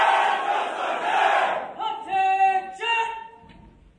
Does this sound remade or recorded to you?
recorded